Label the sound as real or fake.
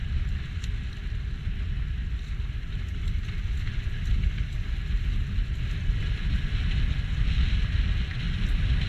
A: real